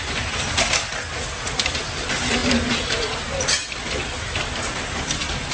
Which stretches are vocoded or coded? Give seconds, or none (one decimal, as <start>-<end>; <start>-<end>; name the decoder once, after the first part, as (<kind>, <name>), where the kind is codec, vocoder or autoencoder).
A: none

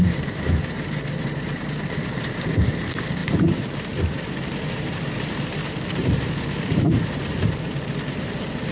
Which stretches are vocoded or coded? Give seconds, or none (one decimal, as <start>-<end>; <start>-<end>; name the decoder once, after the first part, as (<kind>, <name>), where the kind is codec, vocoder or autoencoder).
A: 0.0-8.7 (vocoder, BigVGAN v2)